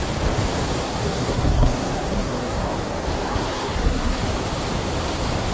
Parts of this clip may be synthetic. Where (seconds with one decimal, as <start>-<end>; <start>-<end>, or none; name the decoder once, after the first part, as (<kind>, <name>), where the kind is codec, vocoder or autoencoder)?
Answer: 0.8-2.7 (codec, SNAC); 3.2-4.2